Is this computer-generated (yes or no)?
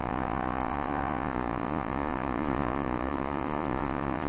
yes